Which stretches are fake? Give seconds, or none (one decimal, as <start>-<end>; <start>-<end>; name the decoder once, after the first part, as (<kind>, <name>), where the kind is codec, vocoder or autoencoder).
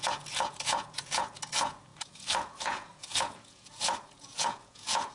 0.0-5.1 (vocoder, Vocos)